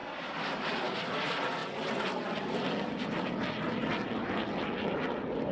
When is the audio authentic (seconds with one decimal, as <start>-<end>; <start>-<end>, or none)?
0.0-5.5